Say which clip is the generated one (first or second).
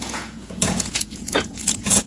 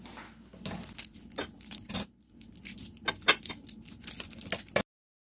first